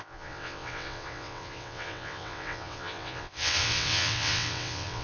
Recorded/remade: remade